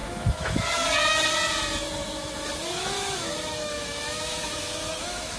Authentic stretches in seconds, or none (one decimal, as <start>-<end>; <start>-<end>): 0.6-2.0